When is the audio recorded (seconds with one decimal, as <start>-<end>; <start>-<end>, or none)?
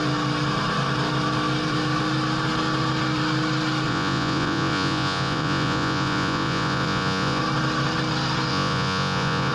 0.0-3.9; 7.4-8.5